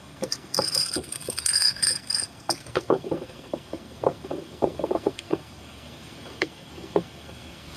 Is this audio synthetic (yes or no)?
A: yes